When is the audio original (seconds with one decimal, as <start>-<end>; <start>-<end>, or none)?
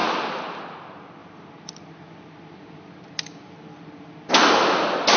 0.6-1.2; 4.3-5.2